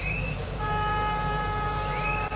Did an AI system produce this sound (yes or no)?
yes